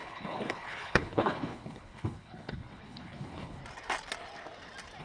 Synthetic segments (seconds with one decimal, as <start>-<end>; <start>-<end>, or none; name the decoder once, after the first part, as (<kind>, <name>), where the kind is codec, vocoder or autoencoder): 0.0-3.6 (codec, HILCodec)